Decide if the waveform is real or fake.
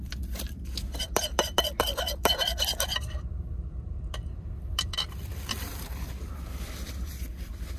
fake